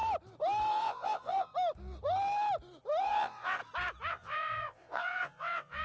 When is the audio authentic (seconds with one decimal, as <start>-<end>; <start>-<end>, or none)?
0.0-0.7; 1.5-3.0; 3.6-4.1

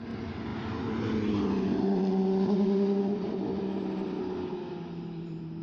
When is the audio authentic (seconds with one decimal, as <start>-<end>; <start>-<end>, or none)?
0.0-5.6

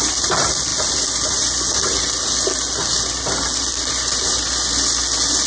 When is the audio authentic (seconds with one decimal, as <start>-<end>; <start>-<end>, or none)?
0.0-5.5

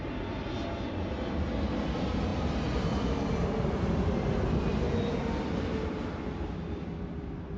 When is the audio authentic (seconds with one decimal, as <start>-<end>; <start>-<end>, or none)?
0.0-7.6

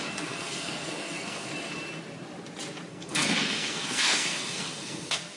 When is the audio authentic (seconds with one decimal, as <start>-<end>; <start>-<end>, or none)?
1.5-2.9